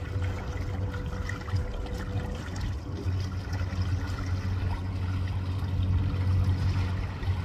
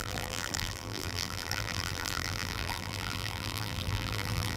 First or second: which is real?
first